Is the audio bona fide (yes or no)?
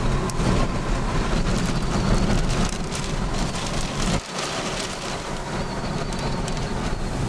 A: yes